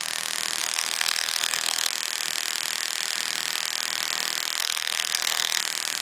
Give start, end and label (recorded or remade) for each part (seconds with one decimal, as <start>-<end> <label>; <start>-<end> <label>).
0.0-0.6 recorded; 0.6-1.9 remade; 1.9-4.6 recorded; 4.6-5.6 remade; 5.6-6.0 recorded

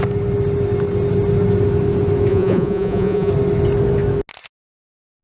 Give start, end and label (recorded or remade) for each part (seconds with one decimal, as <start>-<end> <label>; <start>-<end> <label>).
0.0-2.3 recorded; 2.3-3.3 remade; 3.3-5.2 recorded

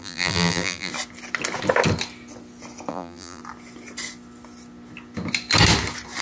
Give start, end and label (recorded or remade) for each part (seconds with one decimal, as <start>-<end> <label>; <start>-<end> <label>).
0.0-0.9 remade; 0.9-2.9 recorded; 2.9-3.4 remade; 3.4-6.2 recorded

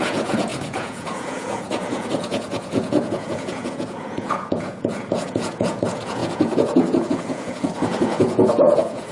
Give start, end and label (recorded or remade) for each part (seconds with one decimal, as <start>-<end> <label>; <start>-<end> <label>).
0.0-9.1 remade

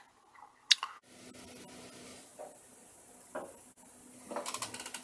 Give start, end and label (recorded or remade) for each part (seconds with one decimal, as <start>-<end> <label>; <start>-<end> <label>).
0.0-5.0 recorded

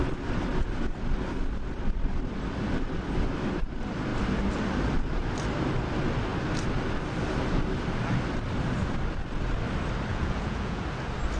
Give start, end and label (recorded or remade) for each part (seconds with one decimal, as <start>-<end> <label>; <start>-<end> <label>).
0.0-10.1 recorded; 10.1-10.8 remade; 10.8-11.4 recorded

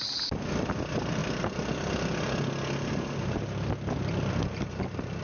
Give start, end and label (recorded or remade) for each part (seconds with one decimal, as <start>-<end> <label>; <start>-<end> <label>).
0.0-5.2 recorded

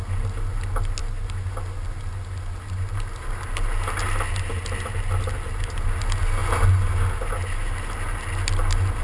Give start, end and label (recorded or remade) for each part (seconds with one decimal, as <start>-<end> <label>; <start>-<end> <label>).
0.0-9.0 recorded